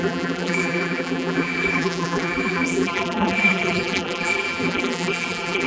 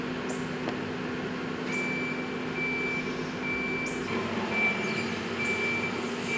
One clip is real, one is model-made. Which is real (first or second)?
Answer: second